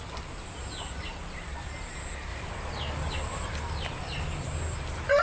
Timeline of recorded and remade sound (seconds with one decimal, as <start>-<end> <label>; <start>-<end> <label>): 0.0-5.2 recorded